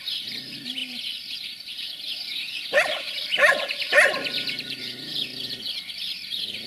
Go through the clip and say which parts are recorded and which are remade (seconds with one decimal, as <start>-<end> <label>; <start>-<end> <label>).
0.0-5.3 remade; 5.3-5.9 recorded; 5.9-6.7 remade